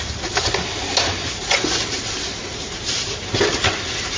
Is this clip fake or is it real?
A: real